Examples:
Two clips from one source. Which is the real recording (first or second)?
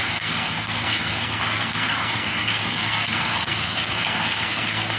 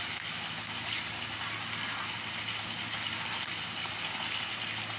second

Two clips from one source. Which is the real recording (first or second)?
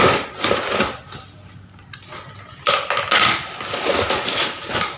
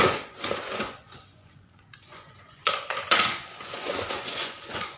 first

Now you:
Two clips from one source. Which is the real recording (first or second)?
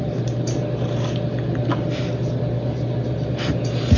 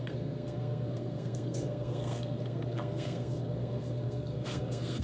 first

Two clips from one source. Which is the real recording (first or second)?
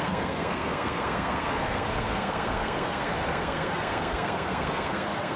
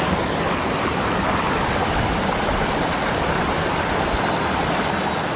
second